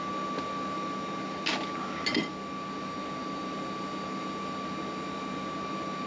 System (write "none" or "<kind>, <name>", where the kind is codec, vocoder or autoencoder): none